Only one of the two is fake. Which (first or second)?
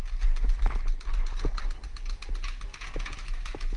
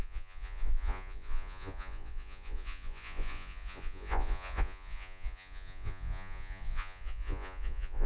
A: second